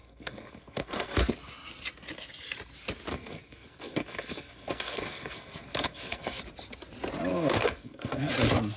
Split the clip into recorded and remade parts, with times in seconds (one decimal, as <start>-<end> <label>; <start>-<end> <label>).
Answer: 0.0-1.3 remade; 1.3-3.1 recorded; 3.1-6.4 remade; 6.4-7.3 recorded; 7.3-8.3 remade; 8.3-8.8 recorded